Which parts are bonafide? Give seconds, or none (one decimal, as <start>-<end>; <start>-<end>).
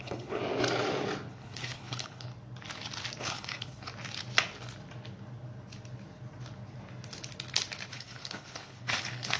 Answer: 0.4-1.3; 2.3-3.2; 3.9-7.9